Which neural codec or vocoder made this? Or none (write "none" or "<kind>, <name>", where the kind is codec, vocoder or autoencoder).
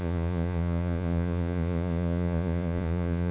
vocoder, Vocos